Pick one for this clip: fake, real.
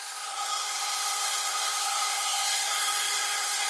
fake